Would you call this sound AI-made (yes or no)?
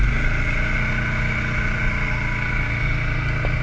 no